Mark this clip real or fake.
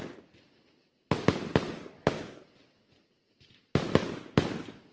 real